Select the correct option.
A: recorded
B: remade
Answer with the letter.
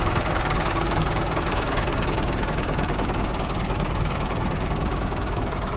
B